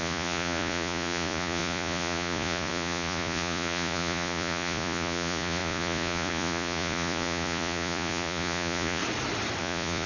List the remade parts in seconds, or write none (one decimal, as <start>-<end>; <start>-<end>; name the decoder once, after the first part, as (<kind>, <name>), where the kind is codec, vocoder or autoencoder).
0.0-9.0 (vocoder, Vocos); 9.6-10.1